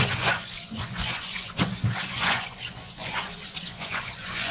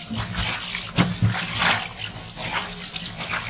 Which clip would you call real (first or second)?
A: second